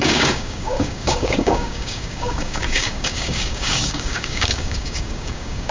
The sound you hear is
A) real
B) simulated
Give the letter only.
B